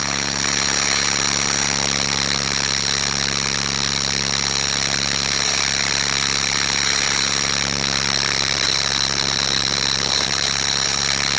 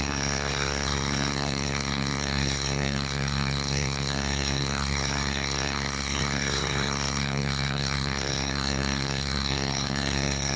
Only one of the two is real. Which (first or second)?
first